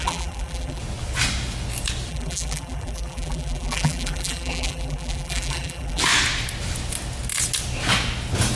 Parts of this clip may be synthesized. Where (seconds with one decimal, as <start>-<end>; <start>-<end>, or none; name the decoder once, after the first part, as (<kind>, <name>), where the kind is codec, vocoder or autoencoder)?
0.0-0.8 (vocoder, BigVGAN v2); 2.1-6.0